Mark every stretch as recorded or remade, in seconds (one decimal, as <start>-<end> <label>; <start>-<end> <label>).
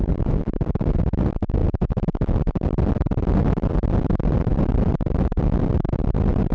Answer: 0.0-6.5 recorded